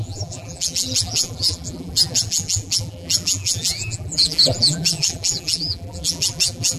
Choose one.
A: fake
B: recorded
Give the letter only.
A